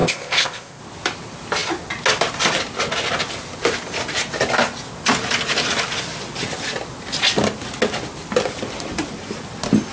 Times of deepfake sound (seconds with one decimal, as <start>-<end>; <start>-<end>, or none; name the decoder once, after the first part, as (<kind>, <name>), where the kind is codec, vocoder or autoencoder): 0.0-0.8 (codec, ZipCodec)